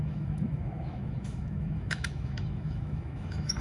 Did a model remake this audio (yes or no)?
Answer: yes